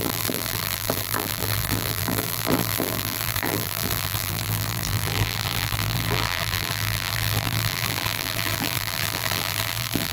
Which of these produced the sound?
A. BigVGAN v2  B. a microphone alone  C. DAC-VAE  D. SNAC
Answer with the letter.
A